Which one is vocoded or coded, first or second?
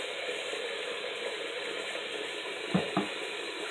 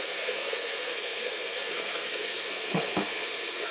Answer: second